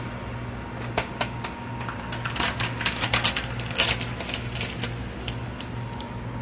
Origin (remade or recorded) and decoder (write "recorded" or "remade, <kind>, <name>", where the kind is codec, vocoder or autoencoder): recorded